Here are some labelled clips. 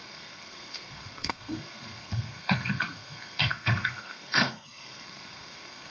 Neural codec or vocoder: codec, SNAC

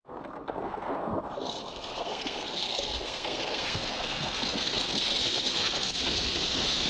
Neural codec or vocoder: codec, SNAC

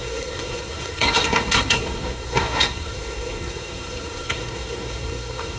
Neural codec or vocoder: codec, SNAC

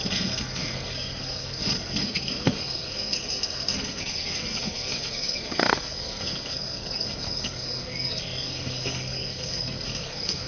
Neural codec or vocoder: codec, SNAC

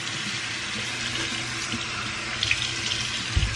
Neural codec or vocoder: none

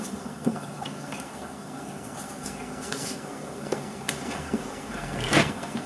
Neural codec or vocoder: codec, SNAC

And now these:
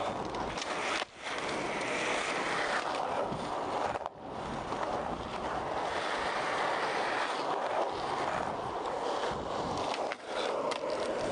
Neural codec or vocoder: none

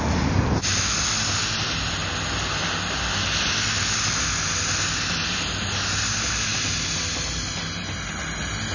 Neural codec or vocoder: none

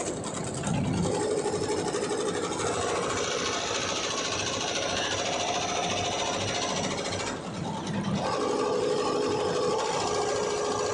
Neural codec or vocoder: none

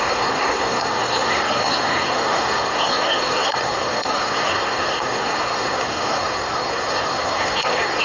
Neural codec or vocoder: codec, SNAC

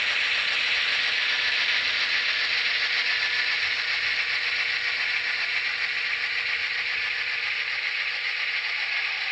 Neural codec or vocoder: none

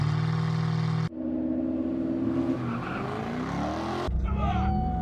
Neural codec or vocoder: none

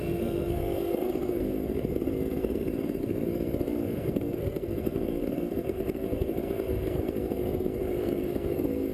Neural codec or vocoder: codec, SNAC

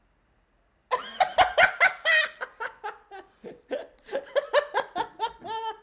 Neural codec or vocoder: none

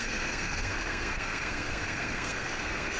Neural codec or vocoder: codec, SNAC